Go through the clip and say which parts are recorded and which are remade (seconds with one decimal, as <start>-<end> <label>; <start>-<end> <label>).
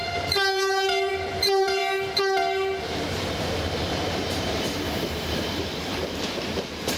0.0-1.8 remade; 1.8-2.8 recorded; 2.8-7.0 remade